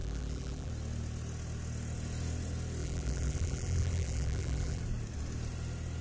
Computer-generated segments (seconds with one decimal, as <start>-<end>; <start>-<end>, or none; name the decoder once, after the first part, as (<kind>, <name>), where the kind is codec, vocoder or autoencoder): 0.0-0.7 (vocoder, BigVGAN v2); 2.8-4.8